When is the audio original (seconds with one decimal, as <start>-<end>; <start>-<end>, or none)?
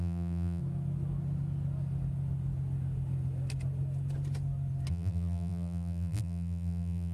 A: 0.6-4.9